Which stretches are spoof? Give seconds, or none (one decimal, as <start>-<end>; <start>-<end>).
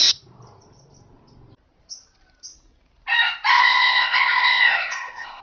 3.5-5.4